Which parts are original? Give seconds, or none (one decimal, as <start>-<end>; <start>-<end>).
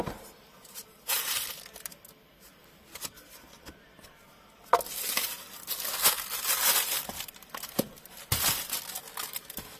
0.0-2.6; 3.8-9.8